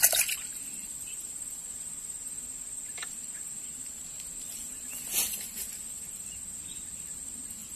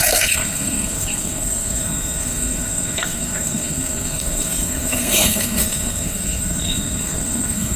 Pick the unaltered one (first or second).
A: first